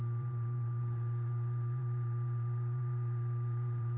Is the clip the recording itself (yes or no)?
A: no